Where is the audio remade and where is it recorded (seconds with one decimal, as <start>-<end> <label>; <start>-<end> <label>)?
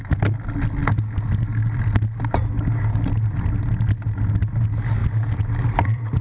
0.0-6.2 recorded